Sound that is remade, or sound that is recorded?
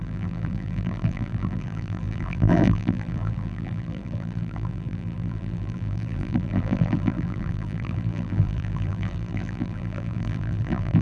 remade